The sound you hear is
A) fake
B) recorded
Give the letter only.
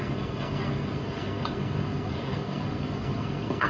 A